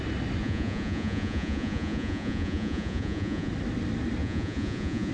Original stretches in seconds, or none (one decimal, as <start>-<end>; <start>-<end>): 0.0-0.4; 3.5-4.2